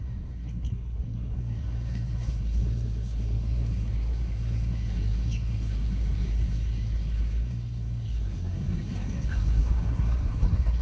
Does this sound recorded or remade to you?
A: remade